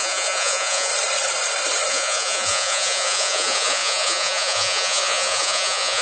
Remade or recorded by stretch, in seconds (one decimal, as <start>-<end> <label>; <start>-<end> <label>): 0.0-0.9 remade; 0.9-1.9 recorded; 1.9-6.0 remade

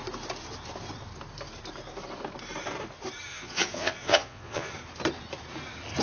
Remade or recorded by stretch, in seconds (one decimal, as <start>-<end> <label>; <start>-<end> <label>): 0.0-3.3 recorded; 3.3-4.7 remade; 4.7-6.0 recorded

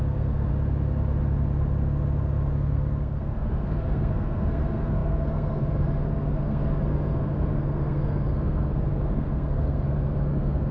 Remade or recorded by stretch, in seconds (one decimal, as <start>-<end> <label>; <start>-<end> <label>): 0.0-0.5 remade; 0.5-2.5 recorded; 2.5-10.7 remade

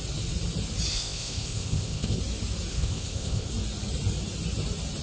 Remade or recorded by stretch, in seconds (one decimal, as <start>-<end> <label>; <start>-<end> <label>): 0.0-0.9 recorded; 0.9-2.2 remade; 2.2-2.7 recorded; 2.7-3.5 remade; 3.5-5.0 recorded